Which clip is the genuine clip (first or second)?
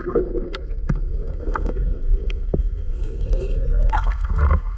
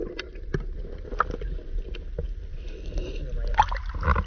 second